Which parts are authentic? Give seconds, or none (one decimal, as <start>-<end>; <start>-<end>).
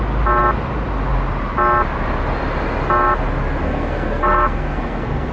0.0-3.6